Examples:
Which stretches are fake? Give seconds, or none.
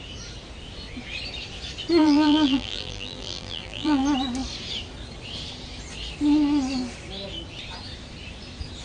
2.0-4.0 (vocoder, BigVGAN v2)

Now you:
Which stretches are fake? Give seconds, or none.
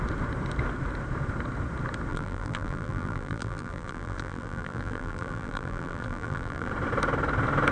2.1-6.7 (vocoder, BigVGAN v2)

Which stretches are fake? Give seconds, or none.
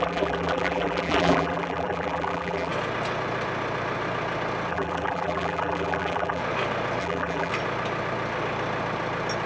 0.0-2.7 (vocoder, BigVGAN v2); 4.7-6.4; 7.0-7.5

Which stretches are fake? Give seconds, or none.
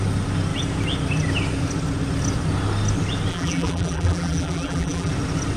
3.3-5.1 (vocoder, BigVGAN v2)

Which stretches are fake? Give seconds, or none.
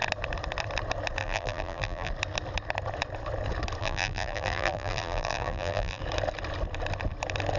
1.2-2.1 (vocoder, BigVGAN v2); 3.8-6.0